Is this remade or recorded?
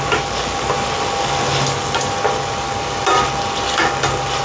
recorded